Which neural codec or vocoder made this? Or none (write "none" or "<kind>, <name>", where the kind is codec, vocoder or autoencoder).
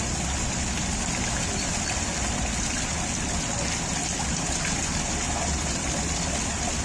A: none